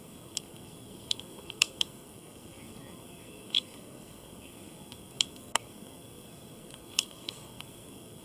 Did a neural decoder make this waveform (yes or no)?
yes